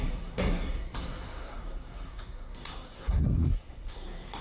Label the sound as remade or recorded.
remade